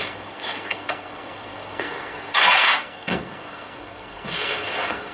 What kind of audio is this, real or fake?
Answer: fake